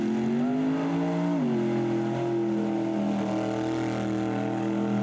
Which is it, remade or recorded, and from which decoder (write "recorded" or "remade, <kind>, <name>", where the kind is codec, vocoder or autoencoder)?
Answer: recorded